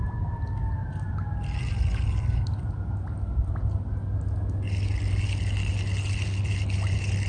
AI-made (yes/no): no